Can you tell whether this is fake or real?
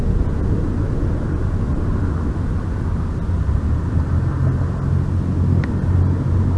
real